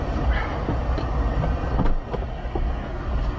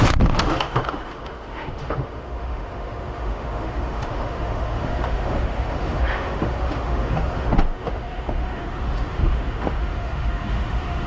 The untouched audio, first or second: first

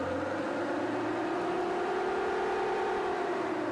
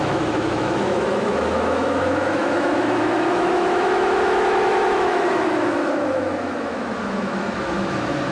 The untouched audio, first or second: first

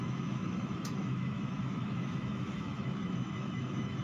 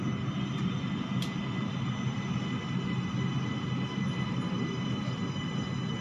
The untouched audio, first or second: second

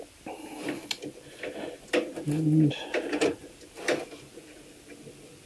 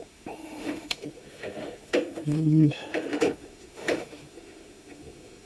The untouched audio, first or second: first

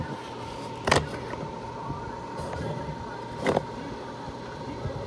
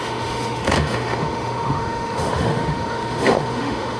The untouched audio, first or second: first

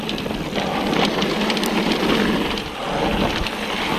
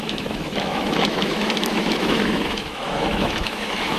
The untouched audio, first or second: first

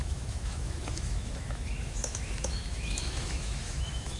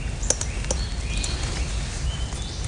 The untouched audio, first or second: second